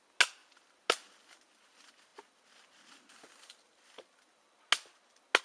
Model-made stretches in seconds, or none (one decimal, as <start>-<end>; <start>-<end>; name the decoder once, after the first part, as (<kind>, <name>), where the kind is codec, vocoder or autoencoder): none